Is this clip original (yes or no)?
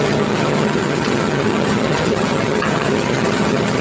no